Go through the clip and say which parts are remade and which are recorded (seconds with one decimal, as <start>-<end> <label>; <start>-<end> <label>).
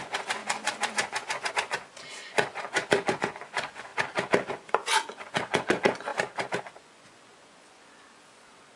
0.0-3.9 remade; 3.9-4.5 recorded; 4.5-6.1 remade; 6.1-6.6 recorded; 6.6-8.8 remade